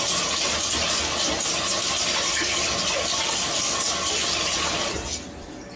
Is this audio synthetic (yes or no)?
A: no